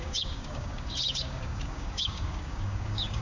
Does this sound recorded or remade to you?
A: remade